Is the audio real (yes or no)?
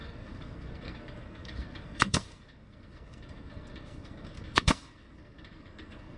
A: no